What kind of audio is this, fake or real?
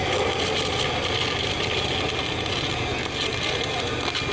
real